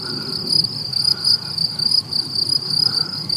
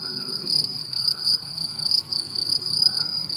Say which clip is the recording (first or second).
first